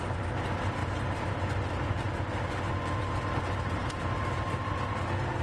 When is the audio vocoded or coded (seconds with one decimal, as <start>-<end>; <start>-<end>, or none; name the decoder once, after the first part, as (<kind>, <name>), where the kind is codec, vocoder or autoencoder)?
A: none